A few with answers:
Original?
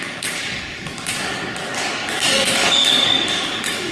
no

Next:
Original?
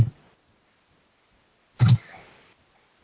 yes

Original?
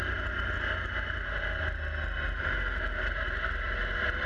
yes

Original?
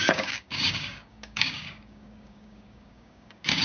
no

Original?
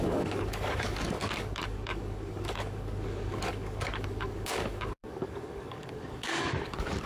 no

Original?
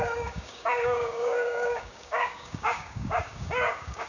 no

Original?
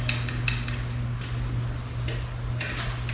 yes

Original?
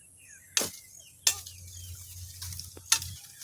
yes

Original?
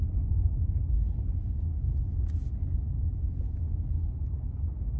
yes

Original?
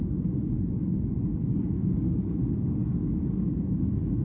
no